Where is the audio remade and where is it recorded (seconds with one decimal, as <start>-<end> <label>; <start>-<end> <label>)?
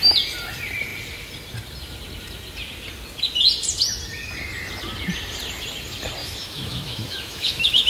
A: 0.0-6.2 recorded; 6.2-7.9 remade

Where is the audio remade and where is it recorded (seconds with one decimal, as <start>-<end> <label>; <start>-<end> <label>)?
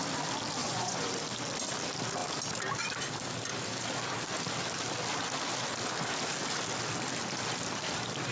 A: 0.0-0.6 recorded; 0.6-1.1 remade; 1.1-8.3 recorded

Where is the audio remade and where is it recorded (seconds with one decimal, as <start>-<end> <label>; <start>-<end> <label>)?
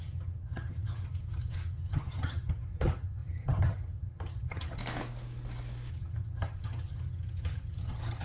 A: 0.0-4.8 remade; 4.8-5.9 recorded; 5.9-8.2 remade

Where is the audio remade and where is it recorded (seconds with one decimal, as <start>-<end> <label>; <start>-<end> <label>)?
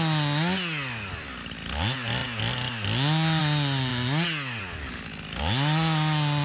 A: 0.0-6.4 recorded